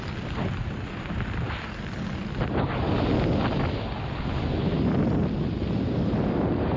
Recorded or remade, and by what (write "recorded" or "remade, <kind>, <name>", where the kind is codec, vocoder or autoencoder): recorded